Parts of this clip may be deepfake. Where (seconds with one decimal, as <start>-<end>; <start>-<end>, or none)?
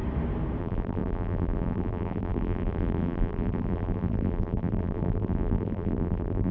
0.6-6.5